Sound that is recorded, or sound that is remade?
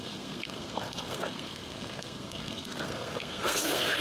remade